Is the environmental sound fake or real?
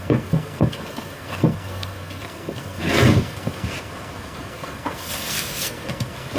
fake